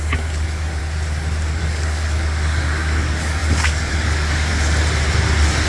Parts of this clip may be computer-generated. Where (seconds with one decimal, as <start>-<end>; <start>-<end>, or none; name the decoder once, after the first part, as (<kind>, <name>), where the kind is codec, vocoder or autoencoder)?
0.0-0.8 (codec, DAC); 1.6-4.5

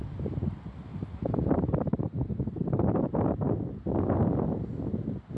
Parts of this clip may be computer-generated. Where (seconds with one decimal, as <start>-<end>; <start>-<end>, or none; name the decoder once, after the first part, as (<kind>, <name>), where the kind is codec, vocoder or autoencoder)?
none

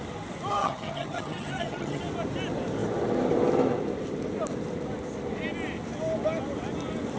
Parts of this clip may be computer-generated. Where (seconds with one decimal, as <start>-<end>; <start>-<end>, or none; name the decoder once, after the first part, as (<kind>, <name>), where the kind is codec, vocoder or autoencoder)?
0.6-2.0 (vocoder, HiFi-GAN)

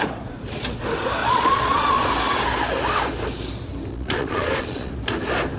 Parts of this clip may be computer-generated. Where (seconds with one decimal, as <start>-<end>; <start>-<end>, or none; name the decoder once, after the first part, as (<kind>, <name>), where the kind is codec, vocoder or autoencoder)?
1.2-2.1 (vocoder, Vocos); 3.9-4.9

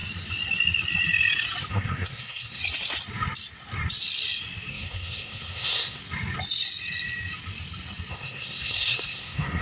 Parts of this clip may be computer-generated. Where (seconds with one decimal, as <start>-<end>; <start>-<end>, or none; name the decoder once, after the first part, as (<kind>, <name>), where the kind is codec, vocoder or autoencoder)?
1.7-2.6 (codec, SNAC); 4.7-6.0; 8.1-9.6

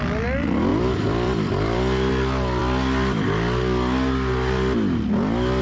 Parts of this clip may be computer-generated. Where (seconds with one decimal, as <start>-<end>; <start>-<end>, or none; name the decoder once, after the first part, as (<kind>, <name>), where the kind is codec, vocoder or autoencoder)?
0.7-2.1 (vocoder, BigVGAN v2)

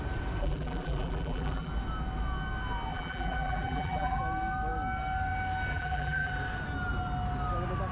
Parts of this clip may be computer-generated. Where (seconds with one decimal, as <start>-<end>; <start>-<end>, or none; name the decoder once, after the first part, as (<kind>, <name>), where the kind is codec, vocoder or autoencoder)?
0.4-1.7 (vocoder, BigVGAN v2); 2.9-4.2; 5.7-6.3

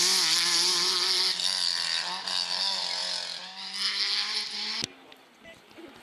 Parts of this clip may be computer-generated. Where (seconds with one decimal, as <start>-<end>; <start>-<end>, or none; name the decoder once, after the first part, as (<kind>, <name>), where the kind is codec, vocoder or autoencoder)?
none